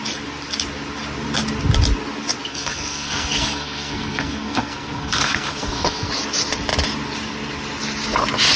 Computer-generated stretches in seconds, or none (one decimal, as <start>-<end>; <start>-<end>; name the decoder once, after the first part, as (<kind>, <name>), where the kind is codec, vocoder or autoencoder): 2.5-6.1 (codec, SNAC)